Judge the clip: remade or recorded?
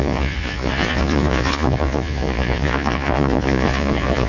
remade